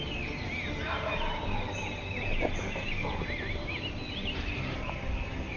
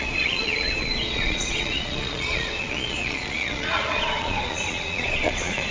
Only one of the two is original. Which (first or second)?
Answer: first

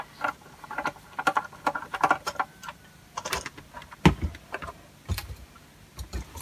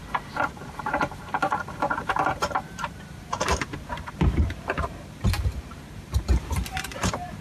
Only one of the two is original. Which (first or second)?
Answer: first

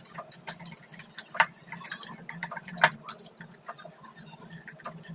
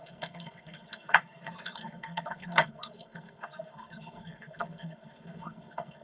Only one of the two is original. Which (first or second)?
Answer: first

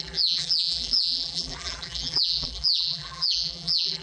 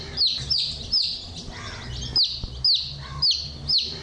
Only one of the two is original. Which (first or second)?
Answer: second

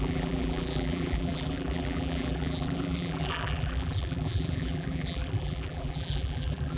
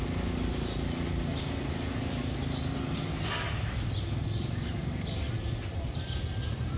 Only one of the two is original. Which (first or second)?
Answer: second